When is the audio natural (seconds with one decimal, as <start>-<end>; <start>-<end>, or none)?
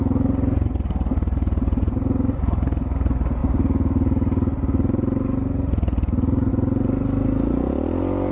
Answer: 0.0-8.3